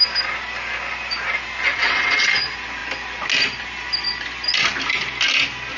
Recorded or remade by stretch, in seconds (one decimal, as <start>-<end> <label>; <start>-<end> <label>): 0.0-1.7 recorded; 1.7-2.3 remade; 2.3-5.8 recorded